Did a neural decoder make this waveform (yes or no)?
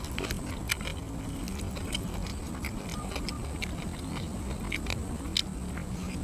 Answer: no